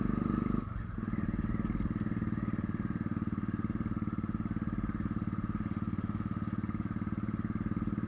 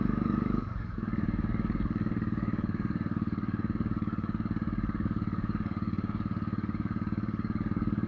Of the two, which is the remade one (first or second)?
second